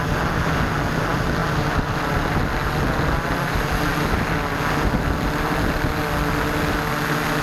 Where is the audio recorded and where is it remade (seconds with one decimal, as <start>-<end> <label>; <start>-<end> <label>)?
0.0-1.4 recorded; 1.4-2.1 remade; 2.1-7.4 recorded